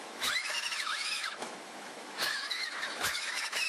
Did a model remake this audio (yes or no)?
yes